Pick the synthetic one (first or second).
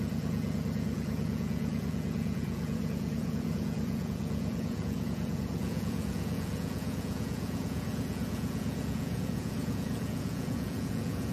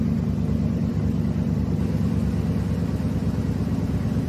first